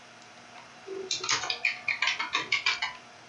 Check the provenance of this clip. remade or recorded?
recorded